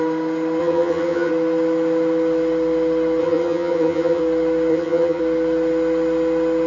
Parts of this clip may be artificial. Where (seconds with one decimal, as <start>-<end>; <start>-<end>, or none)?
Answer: 0.6-1.3; 3.2-4.2; 4.7-5.2

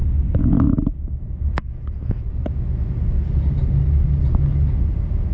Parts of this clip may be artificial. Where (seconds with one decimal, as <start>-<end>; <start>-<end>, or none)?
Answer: none